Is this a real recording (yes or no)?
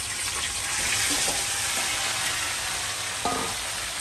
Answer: yes